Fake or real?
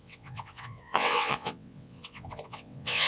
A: fake